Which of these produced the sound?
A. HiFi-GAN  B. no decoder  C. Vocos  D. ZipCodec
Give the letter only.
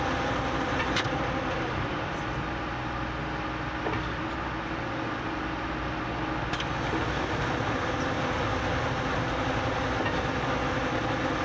B